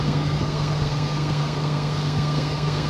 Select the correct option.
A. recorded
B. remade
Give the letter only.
B